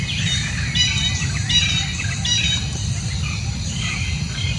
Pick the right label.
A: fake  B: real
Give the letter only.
B